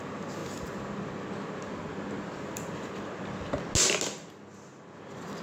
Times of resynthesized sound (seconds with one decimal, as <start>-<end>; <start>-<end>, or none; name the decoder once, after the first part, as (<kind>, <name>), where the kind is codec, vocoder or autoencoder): none